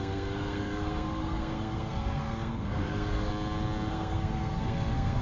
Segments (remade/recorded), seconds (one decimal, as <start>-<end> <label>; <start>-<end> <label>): 0.0-3.3 remade; 3.3-3.9 recorded; 3.9-5.2 remade